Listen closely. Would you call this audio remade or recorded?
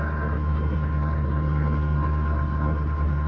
remade